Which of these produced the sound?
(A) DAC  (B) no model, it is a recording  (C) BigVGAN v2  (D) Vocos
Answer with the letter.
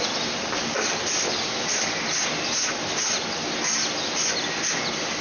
B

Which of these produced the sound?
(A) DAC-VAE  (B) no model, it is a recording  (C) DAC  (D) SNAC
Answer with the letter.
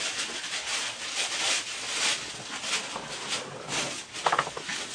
B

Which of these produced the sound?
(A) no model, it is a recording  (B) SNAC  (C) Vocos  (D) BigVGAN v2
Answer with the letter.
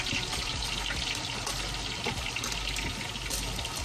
A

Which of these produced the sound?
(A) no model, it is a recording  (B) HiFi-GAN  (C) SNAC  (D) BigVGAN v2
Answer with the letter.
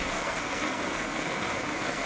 C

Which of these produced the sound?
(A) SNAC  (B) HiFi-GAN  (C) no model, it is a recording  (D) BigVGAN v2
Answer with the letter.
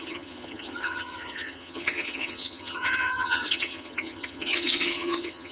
B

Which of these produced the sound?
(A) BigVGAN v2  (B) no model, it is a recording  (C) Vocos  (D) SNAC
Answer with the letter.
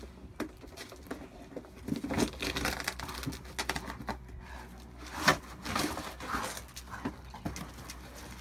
B